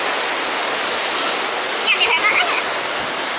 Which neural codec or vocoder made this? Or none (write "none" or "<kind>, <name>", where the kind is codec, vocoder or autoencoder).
none